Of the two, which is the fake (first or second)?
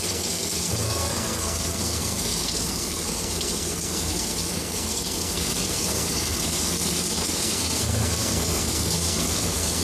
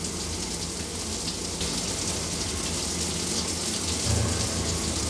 first